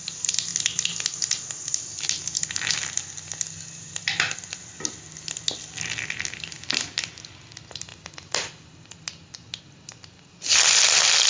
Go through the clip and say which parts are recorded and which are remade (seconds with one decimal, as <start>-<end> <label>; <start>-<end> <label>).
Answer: 0.0-11.3 recorded